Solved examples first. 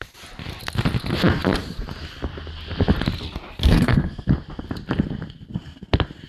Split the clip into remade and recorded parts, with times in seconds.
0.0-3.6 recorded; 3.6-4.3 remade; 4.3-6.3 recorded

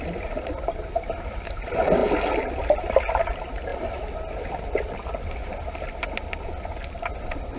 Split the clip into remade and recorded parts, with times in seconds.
0.0-7.6 recorded